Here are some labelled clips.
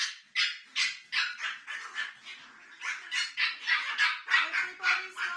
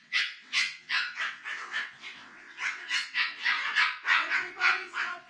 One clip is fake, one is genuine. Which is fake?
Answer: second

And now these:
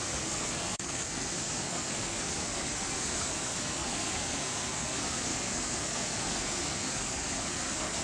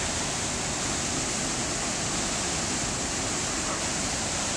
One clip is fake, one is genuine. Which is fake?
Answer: first